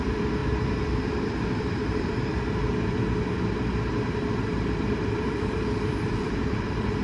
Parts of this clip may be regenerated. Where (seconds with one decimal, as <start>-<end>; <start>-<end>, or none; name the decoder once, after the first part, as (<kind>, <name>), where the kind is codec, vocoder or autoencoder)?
0.0-0.4 (vocoder, BigVGAN v2); 1.6-2.3; 3.9-7.0